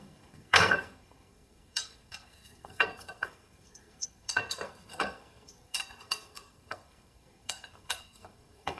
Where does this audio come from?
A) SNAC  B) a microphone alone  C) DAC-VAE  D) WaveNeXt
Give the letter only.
A